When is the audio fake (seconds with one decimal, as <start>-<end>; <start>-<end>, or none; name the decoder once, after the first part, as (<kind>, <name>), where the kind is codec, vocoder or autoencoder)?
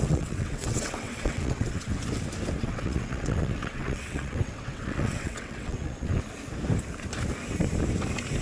0.0-1.9 (vocoder, WaveNeXt); 2.6-6.1